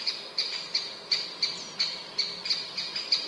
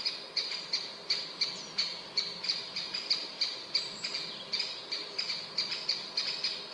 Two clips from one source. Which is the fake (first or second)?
second